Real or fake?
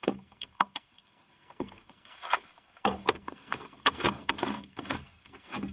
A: fake